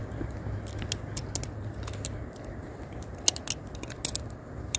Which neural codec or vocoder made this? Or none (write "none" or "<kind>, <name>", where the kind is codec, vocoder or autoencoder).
none